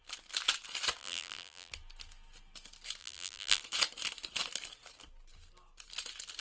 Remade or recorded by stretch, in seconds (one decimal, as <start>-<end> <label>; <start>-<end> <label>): 0.0-1.0 recorded; 1.0-1.7 remade; 1.7-3.0 recorded; 3.0-3.6 remade; 3.6-6.4 recorded